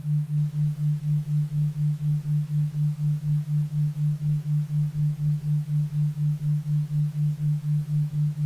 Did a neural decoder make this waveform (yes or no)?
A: yes